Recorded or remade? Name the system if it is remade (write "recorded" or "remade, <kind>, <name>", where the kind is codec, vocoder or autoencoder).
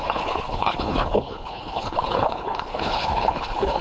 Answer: remade, codec, HILCodec